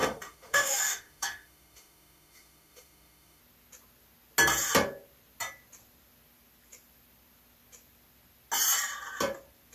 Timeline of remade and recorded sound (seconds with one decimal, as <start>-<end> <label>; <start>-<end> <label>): 0.0-3.4 remade; 3.4-9.7 recorded